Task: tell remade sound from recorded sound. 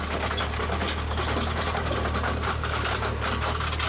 recorded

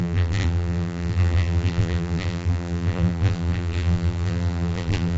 remade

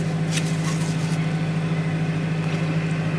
recorded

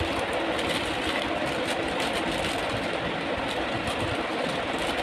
recorded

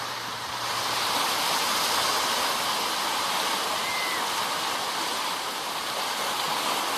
recorded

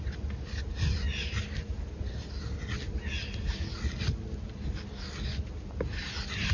recorded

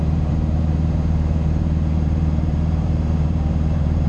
remade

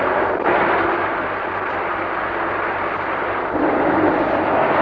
remade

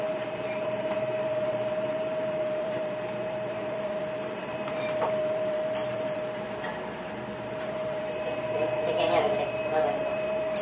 remade